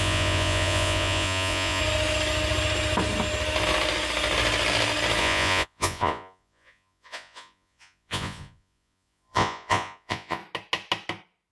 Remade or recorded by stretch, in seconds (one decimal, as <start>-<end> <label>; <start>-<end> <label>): 0.0-1.8 remade; 1.8-5.2 recorded; 5.2-10.4 remade; 10.4-11.5 recorded